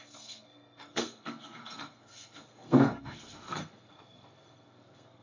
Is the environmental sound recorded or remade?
remade